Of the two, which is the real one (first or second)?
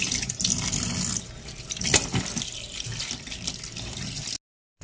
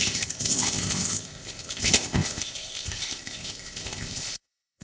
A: first